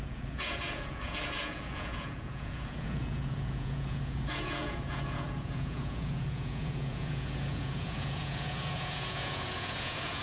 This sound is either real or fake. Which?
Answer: fake